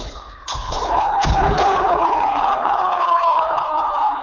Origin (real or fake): fake